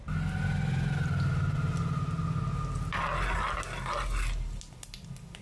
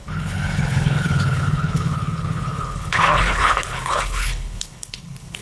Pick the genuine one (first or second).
first